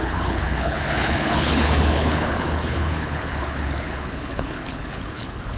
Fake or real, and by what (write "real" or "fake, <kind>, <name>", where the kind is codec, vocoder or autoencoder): fake, codec, HILCodec